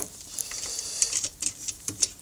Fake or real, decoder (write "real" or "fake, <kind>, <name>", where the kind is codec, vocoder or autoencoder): fake, vocoder, BigVGAN v2